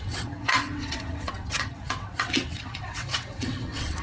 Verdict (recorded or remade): remade